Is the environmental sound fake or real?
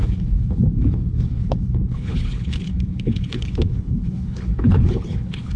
fake